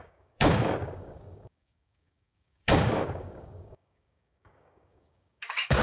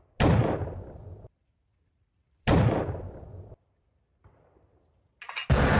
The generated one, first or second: first